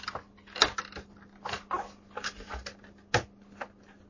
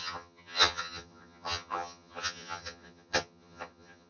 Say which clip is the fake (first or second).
second